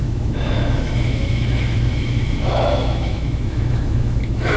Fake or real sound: fake